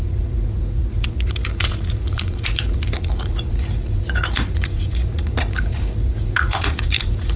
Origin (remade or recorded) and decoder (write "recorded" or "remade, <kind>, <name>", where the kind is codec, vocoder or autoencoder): remade, vocoder, Vocos